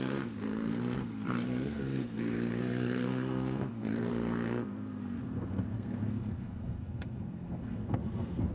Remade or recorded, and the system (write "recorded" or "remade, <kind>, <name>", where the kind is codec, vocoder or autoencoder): remade, codec, SNAC